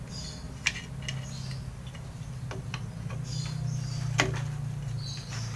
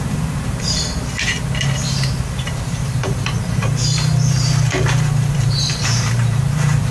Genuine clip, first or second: first